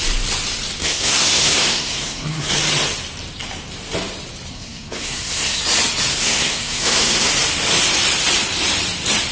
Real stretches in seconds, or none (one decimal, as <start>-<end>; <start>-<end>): 0.0-0.8; 2.5-4.5; 5.6-6.1; 7.3-9.3

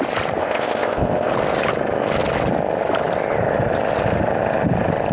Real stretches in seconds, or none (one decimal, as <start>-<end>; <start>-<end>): 0.0-0.4; 1.3-5.1

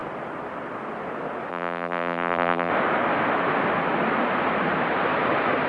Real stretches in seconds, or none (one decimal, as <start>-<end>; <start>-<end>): 0.0-1.5; 2.7-5.7

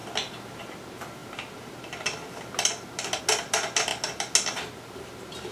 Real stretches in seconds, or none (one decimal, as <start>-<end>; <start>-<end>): 0.0-5.5

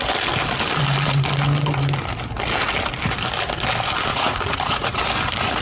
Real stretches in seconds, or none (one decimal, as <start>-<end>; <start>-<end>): 0.0-4.1; 5.0-5.6

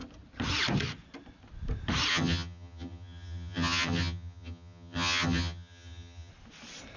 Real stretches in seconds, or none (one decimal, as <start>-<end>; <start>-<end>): 0.0-2.1; 6.3-7.0

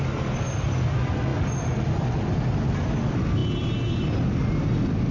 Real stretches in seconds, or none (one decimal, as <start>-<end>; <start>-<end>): 0.0-5.1